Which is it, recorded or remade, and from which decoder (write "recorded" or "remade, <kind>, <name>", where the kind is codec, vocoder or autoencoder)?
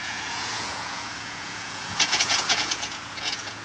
remade, vocoder, Vocos